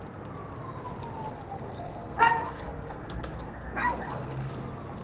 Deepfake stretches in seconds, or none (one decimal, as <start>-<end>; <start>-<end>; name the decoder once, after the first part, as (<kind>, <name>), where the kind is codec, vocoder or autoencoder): 1.5-4.5 (codec, SNAC)